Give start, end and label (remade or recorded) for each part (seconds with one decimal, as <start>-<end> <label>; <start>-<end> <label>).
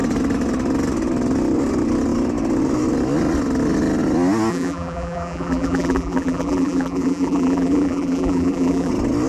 0.0-4.5 recorded; 4.5-8.9 remade; 8.9-9.3 recorded